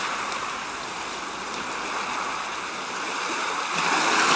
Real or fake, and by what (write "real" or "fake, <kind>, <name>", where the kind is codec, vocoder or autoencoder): real